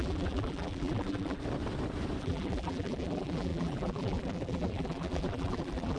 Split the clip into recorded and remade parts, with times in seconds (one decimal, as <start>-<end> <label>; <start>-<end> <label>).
0.0-1.4 remade; 1.4-2.2 recorded; 2.2-6.0 remade